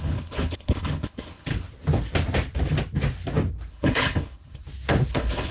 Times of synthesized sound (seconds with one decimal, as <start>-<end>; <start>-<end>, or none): 0.0-1.5; 3.7-4.6; 5.1-5.5